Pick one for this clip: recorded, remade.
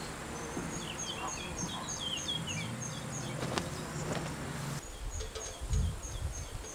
recorded